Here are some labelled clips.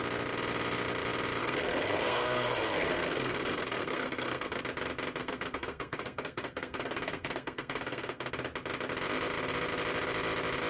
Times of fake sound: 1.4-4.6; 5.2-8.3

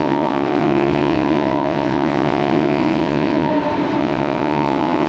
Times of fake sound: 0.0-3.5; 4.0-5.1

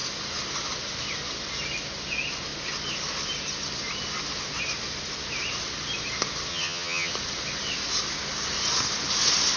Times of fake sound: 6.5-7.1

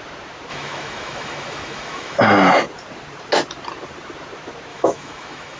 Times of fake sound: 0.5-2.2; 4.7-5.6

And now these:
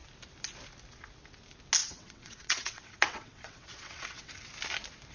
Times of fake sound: 1.8-4.3